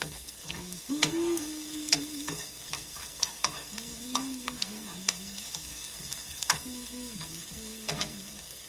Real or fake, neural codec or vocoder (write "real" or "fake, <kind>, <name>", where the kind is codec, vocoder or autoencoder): fake, codec, SNAC